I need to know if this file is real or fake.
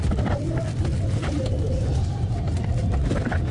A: real